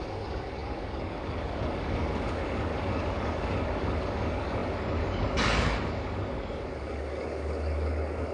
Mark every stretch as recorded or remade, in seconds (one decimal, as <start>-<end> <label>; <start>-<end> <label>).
0.0-8.3 remade